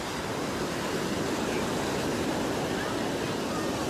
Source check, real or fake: real